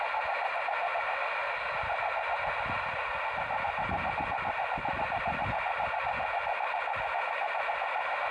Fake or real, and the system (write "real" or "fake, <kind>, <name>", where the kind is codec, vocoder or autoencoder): real